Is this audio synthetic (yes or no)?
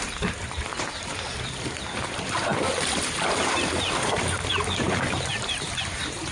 yes